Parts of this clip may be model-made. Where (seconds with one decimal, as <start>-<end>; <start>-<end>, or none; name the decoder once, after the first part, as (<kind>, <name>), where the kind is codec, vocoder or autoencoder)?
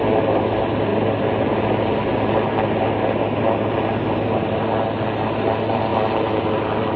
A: none